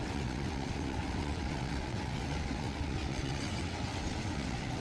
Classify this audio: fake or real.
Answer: fake